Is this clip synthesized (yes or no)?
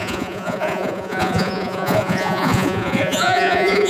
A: yes